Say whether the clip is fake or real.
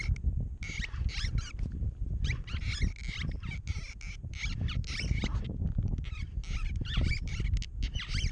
real